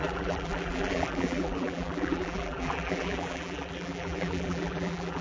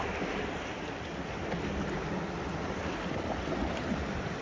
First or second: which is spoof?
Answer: first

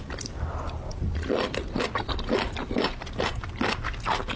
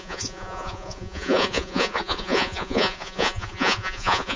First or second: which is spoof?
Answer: second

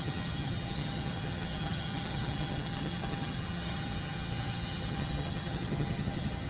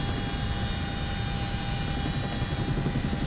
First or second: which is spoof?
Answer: first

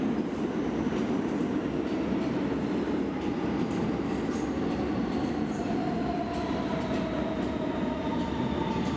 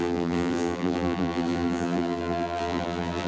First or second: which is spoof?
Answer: second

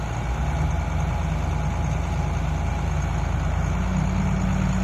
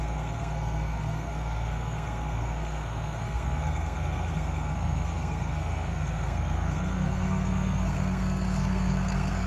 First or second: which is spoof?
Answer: second